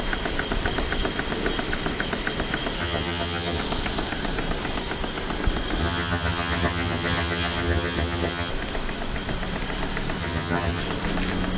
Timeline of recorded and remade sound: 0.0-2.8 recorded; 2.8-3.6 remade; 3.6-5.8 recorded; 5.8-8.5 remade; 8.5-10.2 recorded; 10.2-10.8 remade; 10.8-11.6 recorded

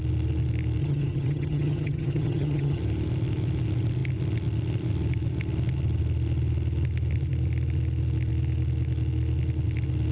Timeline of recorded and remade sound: 0.0-0.8 recorded; 0.8-2.8 remade; 2.8-10.1 recorded

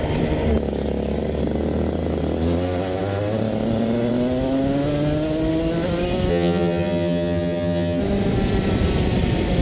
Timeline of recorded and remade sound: 0.0-6.3 recorded; 6.3-8.0 remade; 8.0-9.6 recorded

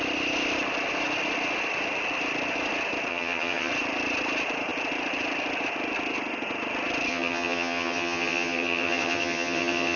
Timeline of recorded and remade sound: 0.0-3.1 recorded; 3.1-3.7 remade; 3.7-7.1 recorded; 7.1-10.0 remade

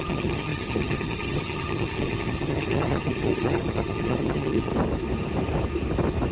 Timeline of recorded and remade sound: 0.0-4.7 remade; 4.7-6.3 recorded

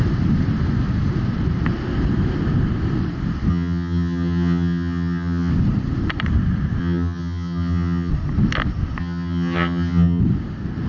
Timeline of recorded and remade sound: 0.0-3.5 recorded; 3.5-5.5 remade; 5.5-6.8 recorded; 6.8-8.1 remade; 8.1-9.0 recorded; 9.0-10.2 remade; 10.2-10.9 recorded

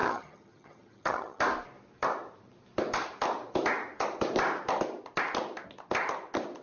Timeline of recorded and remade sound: 0.0-1.4 remade; 1.4-6.6 recorded

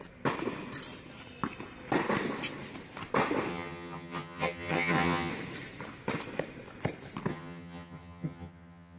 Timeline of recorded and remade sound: 0.0-3.5 recorded; 3.5-5.3 remade; 5.3-7.3 recorded; 7.3-9.0 remade